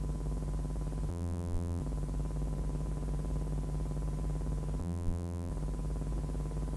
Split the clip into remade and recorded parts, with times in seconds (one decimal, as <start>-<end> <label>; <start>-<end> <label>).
0.0-1.1 recorded; 1.1-1.8 remade; 1.8-4.8 recorded; 4.8-5.5 remade; 5.5-6.8 recorded